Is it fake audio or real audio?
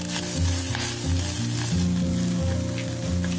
real